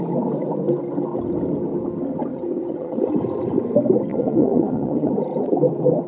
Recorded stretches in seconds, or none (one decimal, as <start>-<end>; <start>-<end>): 0.0-2.3; 3.0-4.1; 5.1-6.1